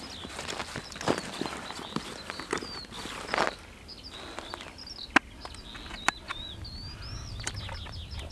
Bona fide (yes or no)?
yes